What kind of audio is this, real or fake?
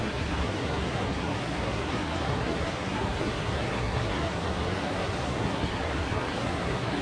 fake